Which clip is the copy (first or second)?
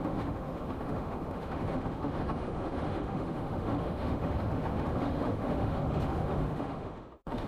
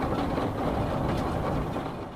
first